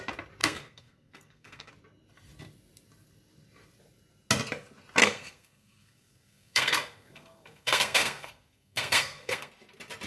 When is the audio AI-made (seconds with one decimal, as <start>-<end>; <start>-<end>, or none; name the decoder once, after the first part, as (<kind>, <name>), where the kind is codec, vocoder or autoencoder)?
0.4-1.7 (codec, SNAC); 5.0-9.5